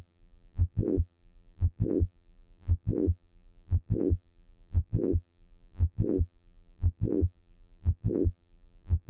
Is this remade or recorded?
remade